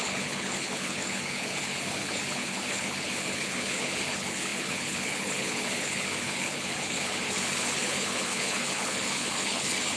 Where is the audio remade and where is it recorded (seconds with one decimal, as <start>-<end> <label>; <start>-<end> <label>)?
0.0-10.0 remade